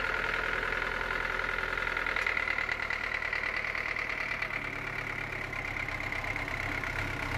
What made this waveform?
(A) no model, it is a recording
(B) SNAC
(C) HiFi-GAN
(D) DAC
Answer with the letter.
A